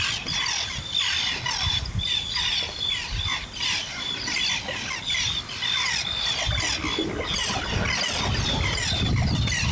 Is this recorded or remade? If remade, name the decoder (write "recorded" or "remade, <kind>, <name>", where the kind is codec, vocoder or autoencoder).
recorded